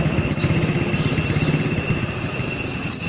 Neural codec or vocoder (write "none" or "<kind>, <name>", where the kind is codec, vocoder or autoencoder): none